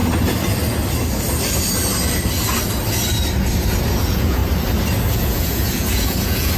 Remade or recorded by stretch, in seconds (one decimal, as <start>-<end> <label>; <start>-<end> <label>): 0.0-4.0 recorded; 4.0-4.4 remade; 4.4-5.1 recorded; 5.1-6.6 remade